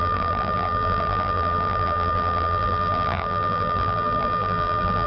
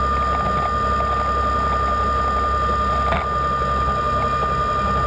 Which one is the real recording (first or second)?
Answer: second